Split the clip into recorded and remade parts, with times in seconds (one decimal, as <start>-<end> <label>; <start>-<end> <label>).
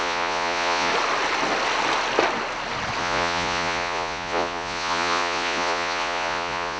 0.0-0.9 remade; 0.9-3.0 recorded; 3.0-6.8 remade